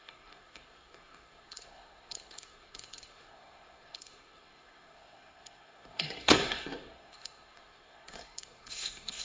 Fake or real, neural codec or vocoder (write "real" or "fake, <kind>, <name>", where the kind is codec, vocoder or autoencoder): fake, codec, SNAC